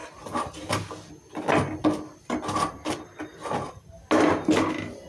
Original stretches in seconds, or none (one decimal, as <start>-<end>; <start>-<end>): 0.0-5.1